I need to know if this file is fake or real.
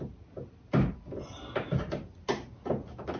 real